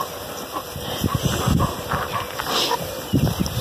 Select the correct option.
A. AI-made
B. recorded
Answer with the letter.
B